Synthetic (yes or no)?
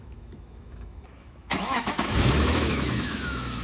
yes